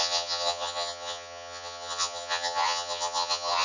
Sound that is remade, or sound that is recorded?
remade